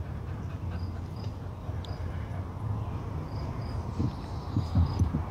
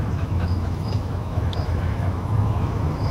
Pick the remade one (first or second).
second